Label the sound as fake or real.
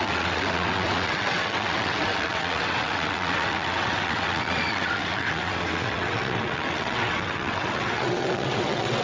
fake